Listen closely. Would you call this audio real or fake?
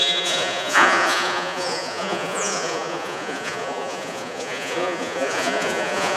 fake